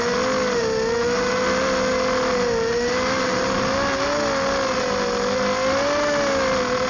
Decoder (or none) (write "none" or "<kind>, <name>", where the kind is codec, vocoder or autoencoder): none